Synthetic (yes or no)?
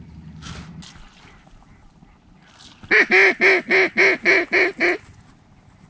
no